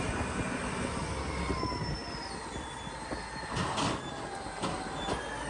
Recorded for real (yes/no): yes